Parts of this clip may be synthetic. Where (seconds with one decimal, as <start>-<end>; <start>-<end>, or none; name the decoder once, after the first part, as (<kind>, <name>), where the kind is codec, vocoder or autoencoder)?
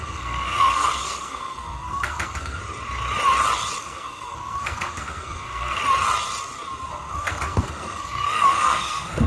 0.0-2.6 (codec, SNAC); 3.8-5.8; 6.9-9.3